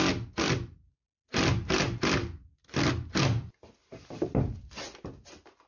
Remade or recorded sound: recorded